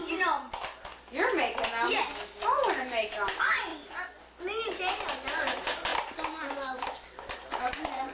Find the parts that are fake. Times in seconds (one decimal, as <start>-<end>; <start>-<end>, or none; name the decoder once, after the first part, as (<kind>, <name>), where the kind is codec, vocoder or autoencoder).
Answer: 3.7-4.4 (vocoder, BigVGAN v2); 5.9-6.4